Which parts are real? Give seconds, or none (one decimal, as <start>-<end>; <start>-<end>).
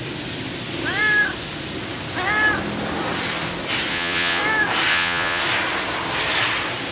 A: 0.0-3.9; 4.4-4.9; 5.4-6.9